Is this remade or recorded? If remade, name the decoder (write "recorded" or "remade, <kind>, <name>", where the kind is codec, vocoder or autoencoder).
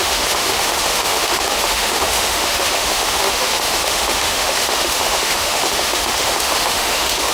remade, autoencoder, DAC-VAE